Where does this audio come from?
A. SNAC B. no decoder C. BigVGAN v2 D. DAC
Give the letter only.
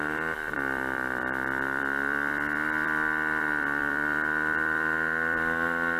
C